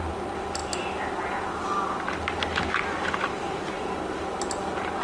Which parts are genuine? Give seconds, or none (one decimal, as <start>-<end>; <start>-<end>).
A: 0.0-5.0